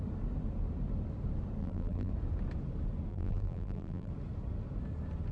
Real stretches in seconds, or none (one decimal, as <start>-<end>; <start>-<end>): 0.0-1.6; 2.1-3.1; 4.1-5.3